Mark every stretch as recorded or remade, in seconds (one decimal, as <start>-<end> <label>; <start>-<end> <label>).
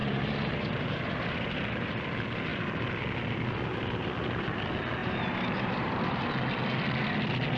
0.0-1.9 remade; 1.9-5.0 recorded; 5.0-6.3 remade; 6.3-7.6 recorded